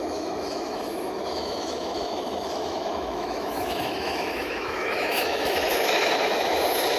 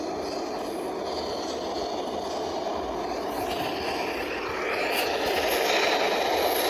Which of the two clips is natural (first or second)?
second